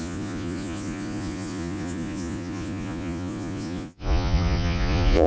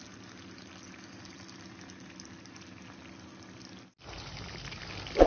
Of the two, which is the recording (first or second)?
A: second